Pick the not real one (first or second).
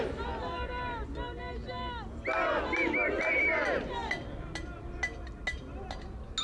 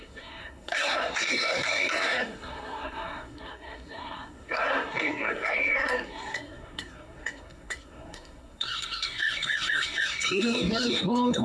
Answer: second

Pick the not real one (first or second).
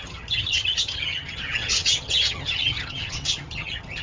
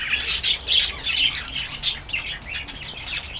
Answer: first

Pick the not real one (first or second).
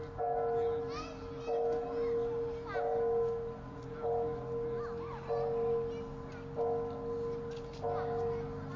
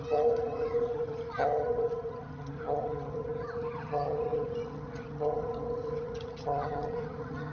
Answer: second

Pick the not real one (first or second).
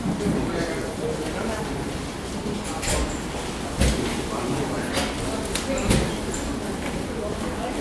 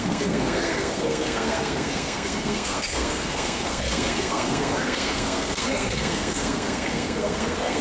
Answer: second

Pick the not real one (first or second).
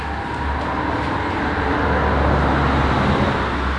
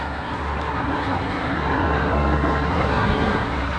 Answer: second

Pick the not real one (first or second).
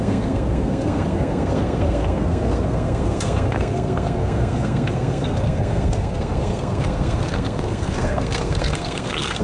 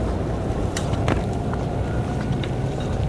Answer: first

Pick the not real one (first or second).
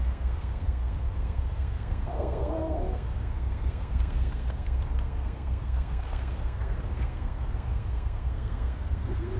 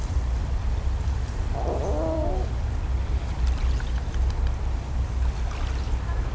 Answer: first